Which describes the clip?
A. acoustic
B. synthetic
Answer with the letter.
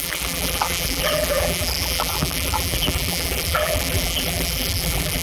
B